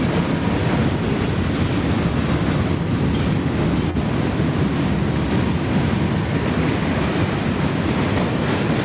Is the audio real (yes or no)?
yes